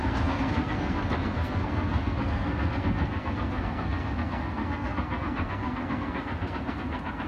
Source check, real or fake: fake